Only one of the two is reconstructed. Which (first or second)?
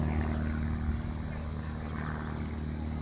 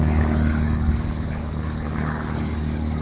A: second